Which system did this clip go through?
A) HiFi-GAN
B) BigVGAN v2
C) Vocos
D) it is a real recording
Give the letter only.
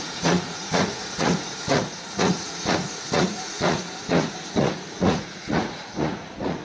C